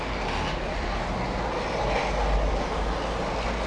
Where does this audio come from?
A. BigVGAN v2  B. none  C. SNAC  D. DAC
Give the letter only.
B